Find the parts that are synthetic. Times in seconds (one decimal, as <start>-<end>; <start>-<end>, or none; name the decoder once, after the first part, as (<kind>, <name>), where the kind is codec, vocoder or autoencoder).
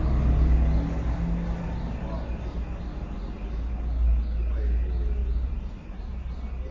5.2-6.1 (vocoder, BigVGAN v2)